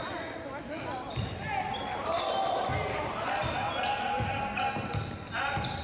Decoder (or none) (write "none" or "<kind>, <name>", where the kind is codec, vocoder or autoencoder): none